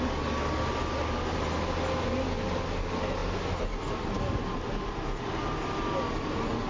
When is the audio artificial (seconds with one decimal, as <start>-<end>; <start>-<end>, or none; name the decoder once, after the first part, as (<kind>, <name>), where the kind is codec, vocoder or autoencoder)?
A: none